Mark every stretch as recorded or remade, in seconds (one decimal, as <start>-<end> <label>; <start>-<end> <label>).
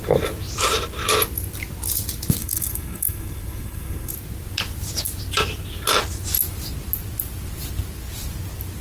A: 0.0-2.4 recorded; 2.4-4.1 remade; 4.1-8.8 recorded